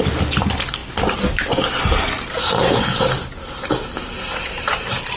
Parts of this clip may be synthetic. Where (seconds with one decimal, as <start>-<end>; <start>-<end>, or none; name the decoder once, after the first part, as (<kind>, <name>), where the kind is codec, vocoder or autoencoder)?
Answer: none